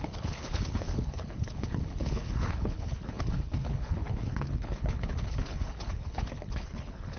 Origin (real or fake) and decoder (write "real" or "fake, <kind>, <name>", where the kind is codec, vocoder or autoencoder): fake, codec, HILCodec